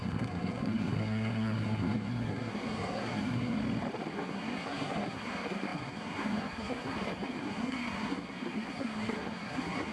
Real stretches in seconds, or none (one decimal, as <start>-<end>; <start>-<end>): 3.6-4.1